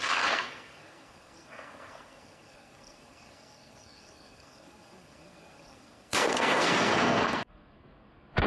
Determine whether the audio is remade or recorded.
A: remade